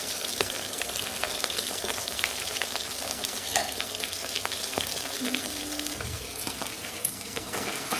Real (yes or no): no